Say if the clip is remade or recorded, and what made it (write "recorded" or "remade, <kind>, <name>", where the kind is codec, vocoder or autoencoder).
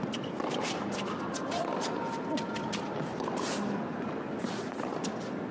recorded